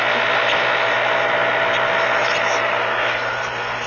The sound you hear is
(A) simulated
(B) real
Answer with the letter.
B